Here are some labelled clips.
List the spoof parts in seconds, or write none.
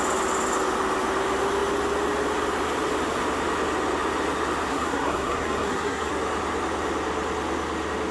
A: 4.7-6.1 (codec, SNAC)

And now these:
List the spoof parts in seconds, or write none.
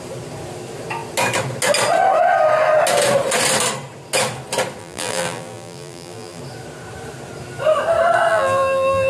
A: 4.8-6.4 (vocoder, BigVGAN v2); 8.3-9.1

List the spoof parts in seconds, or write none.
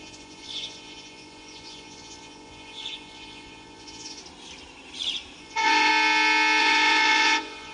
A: 0.0-4.2 (vocoder, Vocos); 5.4-5.9; 6.6-7.7